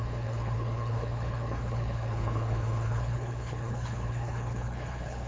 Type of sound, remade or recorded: remade